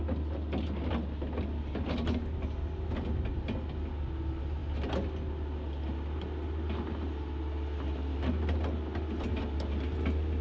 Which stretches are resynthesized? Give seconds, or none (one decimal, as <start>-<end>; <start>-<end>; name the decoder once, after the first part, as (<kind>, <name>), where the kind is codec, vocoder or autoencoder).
none